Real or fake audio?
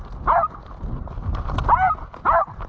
real